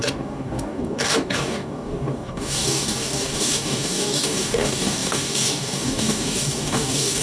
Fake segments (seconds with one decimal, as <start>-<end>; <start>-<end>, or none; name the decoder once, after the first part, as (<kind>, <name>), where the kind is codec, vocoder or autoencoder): 0.0-7.2 (codec, DAC)